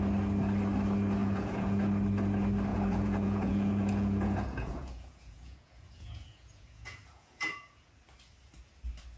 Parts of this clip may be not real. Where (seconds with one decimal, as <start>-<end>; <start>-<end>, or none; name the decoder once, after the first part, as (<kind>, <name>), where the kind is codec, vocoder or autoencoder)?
1.2-1.8 (vocoder, Vocos); 2.7-7.9